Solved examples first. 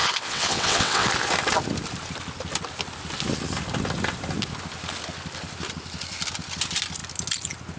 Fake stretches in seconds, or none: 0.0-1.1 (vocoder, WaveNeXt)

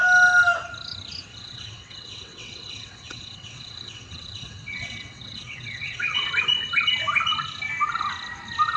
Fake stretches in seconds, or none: 1.3-6.3 (vocoder, WaveNeXt)

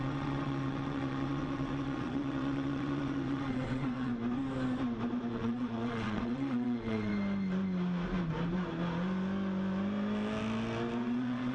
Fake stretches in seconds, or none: 0.0-4.1 (vocoder, WaveNeXt); 5.3-7.1; 11.0-11.5

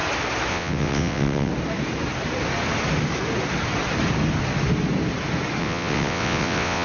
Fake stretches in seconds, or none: 0.5-1.5 (vocoder, WaveNeXt); 5.6-6.8

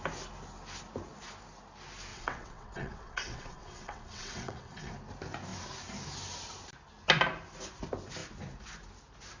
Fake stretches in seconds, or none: 2.1-4.9 (vocoder, WaveNeXt)